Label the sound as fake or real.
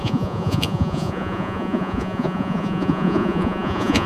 fake